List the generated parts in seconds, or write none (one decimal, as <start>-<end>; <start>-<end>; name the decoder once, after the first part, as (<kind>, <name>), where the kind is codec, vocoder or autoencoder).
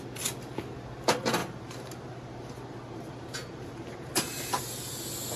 1.4-4.6 (vocoder, BigVGAN v2)